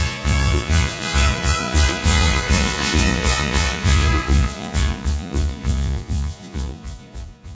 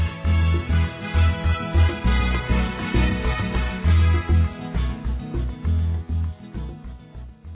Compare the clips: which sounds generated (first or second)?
first